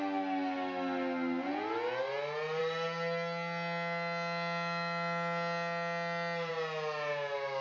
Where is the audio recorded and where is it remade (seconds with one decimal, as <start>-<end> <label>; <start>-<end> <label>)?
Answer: 0.0-7.6 recorded